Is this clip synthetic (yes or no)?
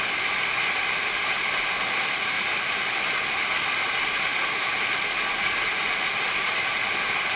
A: no